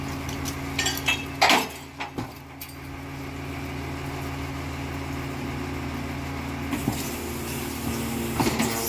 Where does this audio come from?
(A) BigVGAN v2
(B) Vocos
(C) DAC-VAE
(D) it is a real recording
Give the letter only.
D